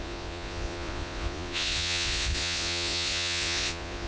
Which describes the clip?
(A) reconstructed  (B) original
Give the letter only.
A